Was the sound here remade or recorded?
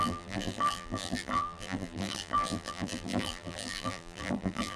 remade